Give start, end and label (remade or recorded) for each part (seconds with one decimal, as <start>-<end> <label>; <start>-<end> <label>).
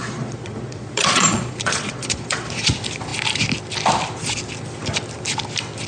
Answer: 0.0-2.7 remade; 2.7-5.9 recorded